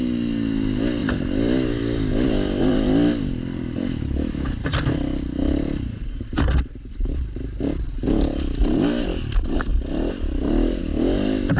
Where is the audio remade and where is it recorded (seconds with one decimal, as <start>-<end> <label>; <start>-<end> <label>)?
0.0-1.0 recorded; 1.0-2.7 remade; 2.7-9.7 recorded; 9.7-10.8 remade; 10.8-11.6 recorded